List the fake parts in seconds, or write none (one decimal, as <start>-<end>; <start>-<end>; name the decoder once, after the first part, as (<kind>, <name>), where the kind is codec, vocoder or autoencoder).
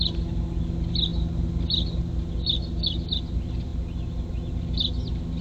none